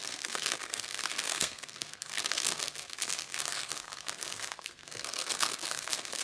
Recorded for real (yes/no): no